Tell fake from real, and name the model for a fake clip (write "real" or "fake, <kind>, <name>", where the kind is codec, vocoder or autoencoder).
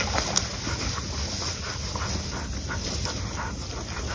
real